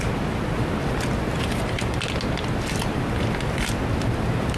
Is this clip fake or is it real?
real